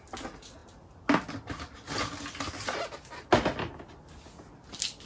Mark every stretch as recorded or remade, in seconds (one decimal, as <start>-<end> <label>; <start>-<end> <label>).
0.0-5.1 recorded